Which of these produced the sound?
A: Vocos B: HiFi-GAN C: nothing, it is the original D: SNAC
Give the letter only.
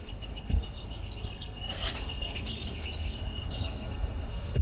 D